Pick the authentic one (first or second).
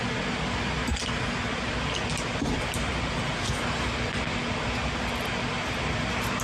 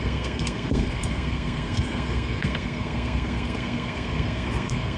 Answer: first